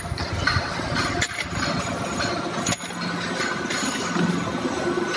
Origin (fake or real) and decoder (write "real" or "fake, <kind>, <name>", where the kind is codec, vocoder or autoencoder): real